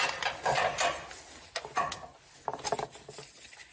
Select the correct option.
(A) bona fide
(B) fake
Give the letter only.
A